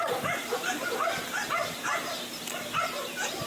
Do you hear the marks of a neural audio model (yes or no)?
no